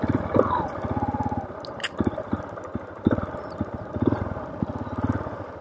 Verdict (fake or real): real